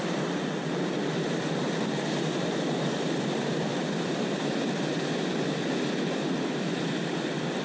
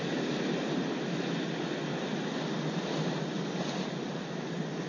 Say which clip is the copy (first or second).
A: first